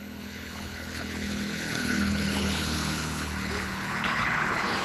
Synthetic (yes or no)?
yes